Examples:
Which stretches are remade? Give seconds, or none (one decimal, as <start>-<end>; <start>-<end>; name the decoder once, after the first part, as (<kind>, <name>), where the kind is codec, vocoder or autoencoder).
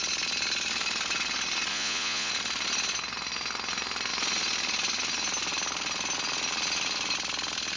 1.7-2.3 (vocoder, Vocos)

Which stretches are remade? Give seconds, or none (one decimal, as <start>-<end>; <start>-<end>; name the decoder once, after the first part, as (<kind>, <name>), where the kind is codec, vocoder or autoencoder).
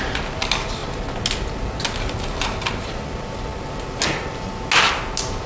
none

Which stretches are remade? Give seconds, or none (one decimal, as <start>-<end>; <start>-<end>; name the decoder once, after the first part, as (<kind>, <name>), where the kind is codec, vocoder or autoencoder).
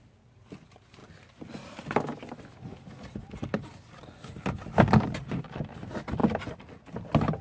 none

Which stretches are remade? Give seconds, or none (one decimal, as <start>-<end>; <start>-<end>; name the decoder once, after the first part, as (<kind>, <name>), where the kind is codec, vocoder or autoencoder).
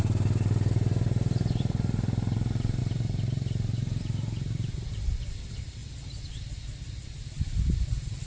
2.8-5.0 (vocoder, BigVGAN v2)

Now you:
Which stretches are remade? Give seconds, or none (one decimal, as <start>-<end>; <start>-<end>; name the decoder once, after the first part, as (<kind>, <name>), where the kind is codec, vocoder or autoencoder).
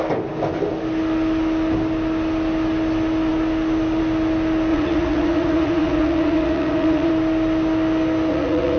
4.7-7.1 (vocoder, Vocos); 8.3-8.8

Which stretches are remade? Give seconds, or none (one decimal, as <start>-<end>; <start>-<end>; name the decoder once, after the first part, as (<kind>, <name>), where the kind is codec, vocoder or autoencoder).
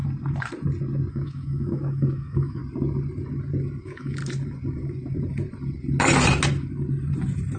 1.1-2.6 (autoencoder, DAC-VAE); 3.8-4.2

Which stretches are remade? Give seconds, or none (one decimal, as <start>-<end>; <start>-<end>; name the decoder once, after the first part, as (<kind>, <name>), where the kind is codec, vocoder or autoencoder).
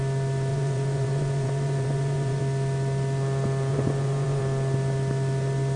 0.5-2.4 (vocoder, Vocos); 3.7-4.4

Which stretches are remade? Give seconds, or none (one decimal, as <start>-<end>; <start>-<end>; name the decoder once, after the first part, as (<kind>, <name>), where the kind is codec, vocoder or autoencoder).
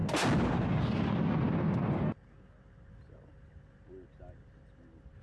none